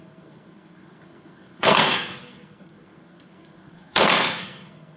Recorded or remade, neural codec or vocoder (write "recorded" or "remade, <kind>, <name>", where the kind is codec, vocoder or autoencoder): remade, codec, SNAC